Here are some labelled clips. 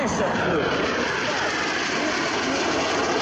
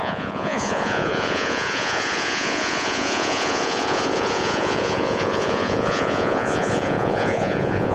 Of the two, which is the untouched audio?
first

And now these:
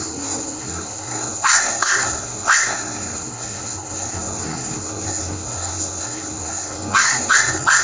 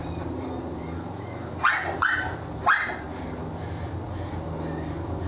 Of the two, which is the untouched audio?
second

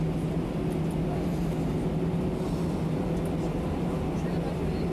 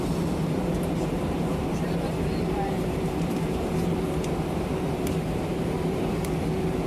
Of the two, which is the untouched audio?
first